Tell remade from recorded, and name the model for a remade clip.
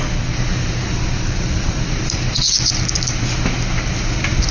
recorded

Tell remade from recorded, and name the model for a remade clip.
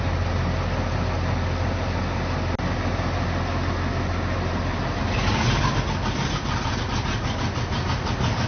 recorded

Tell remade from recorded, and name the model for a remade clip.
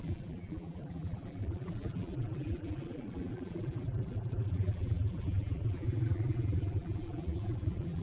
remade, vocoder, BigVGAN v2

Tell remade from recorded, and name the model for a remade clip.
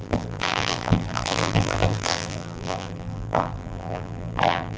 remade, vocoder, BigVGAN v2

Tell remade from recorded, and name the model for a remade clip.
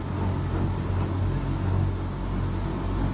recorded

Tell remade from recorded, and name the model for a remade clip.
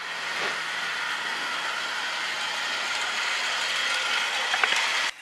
recorded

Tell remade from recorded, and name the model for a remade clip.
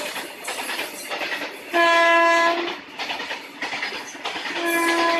recorded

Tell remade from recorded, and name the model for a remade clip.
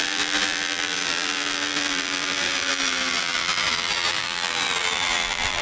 remade, vocoder, BigVGAN v2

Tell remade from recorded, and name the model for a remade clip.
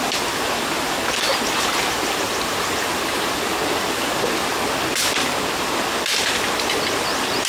recorded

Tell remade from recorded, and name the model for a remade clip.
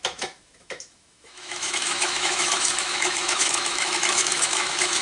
remade, autoencoder, DAC-VAE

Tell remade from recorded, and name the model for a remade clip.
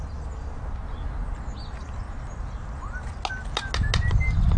recorded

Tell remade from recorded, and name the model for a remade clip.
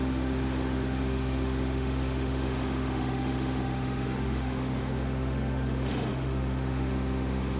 remade, autoencoder, DAC-VAE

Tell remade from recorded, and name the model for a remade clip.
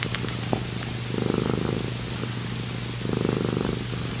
recorded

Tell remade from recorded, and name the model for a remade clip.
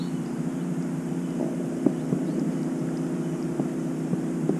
recorded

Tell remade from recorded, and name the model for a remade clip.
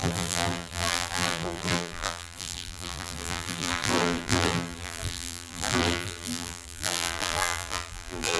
remade, vocoder, BigVGAN v2